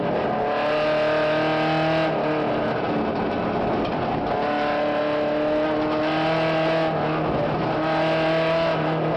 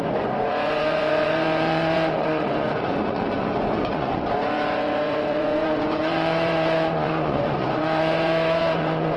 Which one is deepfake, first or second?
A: second